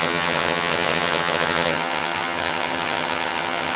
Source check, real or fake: fake